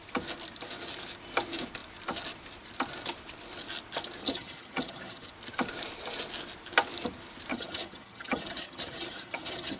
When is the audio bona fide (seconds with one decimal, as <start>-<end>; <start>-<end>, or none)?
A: 0.0-4.2; 5.3-7.5